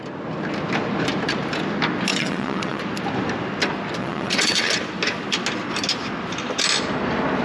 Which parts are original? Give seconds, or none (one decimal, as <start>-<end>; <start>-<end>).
0.0-2.1; 2.8-4.0; 4.7-7.4